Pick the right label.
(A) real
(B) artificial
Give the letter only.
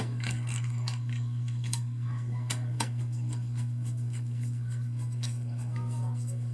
B